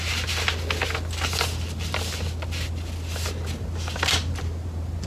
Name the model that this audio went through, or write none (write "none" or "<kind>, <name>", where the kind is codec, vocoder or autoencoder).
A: none